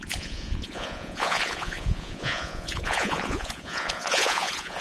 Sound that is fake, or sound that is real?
fake